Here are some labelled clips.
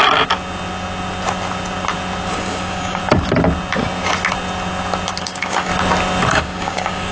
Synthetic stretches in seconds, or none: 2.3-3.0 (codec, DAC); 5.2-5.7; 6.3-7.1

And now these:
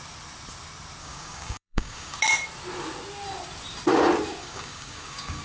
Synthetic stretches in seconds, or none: 1.0-2.2 (codec, DAC); 4.4-5.4

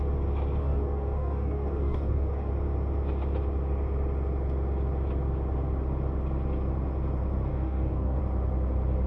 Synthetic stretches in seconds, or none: 0.6-2.5 (codec, DAC); 7.5-8.2

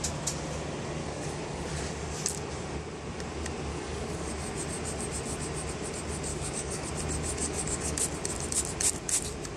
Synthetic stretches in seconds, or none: 1.0-1.8 (codec, DAC); 3.7-4.3; 6.3-6.9; 7.4-8.0

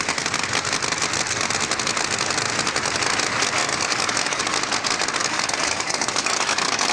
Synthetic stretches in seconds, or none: 3.6-4.4 (codec, DAC); 5.2-6.9